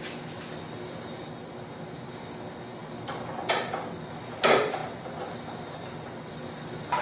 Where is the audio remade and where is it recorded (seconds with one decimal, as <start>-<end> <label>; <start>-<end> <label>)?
0.0-7.0 recorded